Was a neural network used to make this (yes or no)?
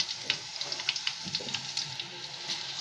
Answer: no